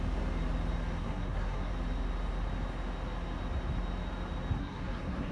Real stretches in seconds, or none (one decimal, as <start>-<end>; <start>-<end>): 0.0-1.0; 1.7-4.6